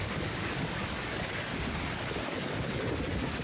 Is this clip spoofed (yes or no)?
yes